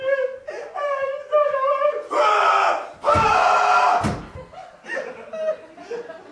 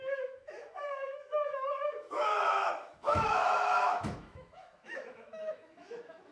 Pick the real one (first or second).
first